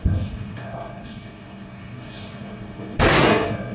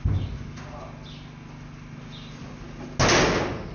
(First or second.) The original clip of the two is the second